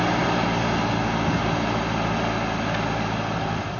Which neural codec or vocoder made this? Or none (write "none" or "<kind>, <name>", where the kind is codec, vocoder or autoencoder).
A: none